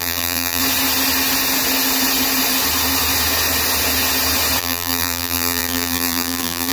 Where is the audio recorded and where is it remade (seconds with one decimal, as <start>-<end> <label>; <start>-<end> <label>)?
0.0-0.6 remade; 0.6-4.6 recorded; 4.6-6.7 remade